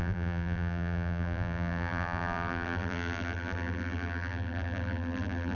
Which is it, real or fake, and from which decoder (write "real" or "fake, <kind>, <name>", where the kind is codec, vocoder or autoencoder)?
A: fake, vocoder, BigVGAN v2